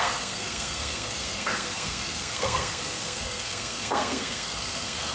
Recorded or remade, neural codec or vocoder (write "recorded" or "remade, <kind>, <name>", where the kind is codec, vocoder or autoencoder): remade, codec, SNAC